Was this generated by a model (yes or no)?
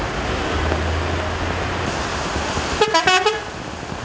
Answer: no